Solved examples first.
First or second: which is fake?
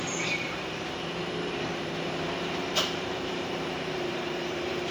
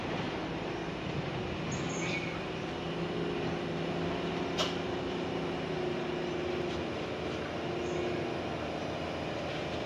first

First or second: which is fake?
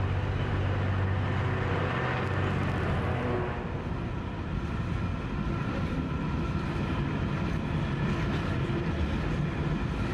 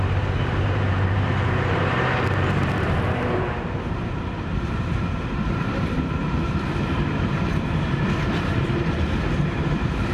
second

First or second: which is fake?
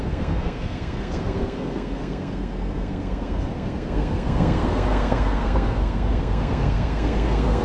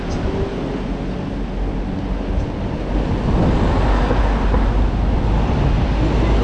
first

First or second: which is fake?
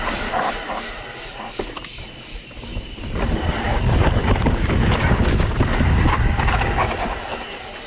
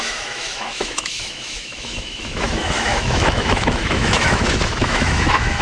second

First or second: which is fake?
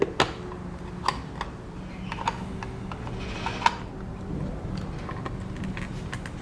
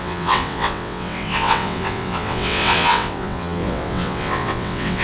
second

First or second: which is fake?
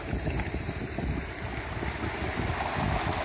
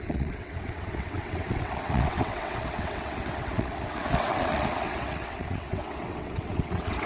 second